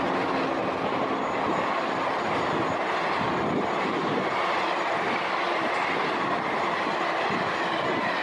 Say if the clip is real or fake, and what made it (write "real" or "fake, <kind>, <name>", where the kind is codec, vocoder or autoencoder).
real